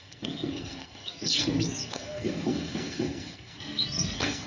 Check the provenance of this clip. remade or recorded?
remade